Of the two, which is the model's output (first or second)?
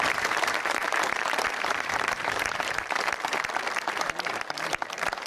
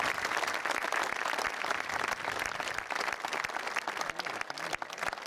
first